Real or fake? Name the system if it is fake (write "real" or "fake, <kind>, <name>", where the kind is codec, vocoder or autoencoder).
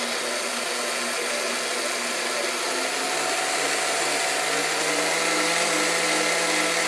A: real